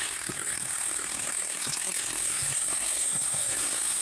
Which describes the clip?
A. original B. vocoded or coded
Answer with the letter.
B